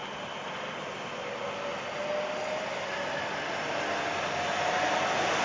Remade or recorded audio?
recorded